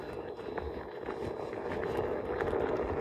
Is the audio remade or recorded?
recorded